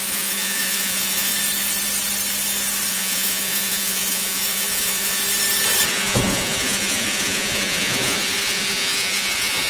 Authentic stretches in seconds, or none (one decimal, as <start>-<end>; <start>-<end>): 1.3-2.9; 5.2-5.9